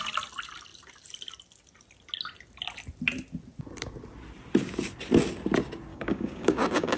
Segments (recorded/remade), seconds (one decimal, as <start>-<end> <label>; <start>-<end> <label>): 0.0-5.9 recorded; 5.9-7.0 remade